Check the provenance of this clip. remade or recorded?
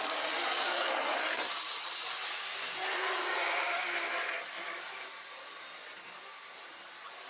recorded